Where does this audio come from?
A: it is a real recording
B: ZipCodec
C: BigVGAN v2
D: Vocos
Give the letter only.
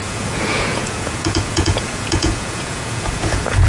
D